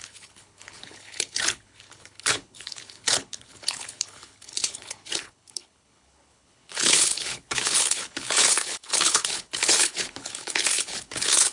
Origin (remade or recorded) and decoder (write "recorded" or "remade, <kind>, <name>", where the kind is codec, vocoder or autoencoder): remade, codec, HILCodec